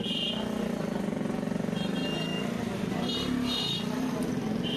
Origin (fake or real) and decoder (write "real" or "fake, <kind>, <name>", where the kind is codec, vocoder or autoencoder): real